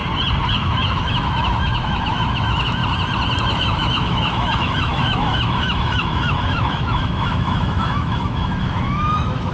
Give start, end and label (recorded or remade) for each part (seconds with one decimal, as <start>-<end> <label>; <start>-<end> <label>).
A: 0.0-0.5 recorded; 0.5-2.8 remade; 2.8-3.4 recorded; 3.4-9.5 remade